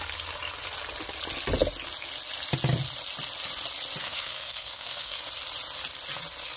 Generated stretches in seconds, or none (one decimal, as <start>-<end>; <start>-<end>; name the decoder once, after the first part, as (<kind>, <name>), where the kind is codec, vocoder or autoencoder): 4.0-5.2 (codec, SNAC)